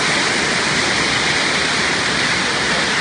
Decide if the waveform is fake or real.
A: real